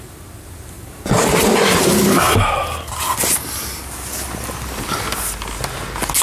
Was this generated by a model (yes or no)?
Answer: no